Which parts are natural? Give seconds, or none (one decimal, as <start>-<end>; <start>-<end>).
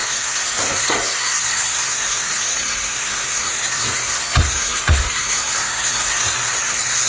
none